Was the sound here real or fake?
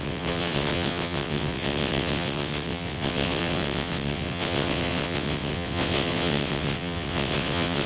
fake